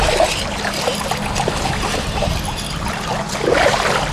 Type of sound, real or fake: real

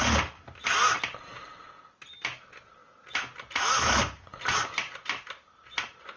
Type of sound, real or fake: real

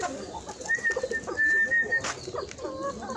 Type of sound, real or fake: real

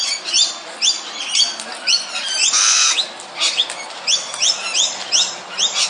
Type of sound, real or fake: real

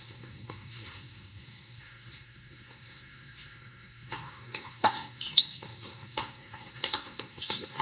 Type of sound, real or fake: fake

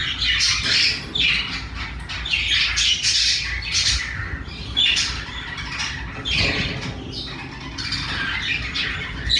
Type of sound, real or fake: real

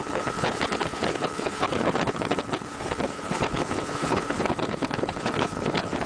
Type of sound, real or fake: fake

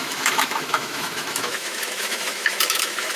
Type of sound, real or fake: fake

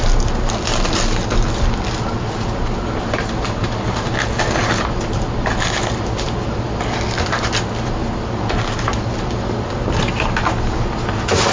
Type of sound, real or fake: real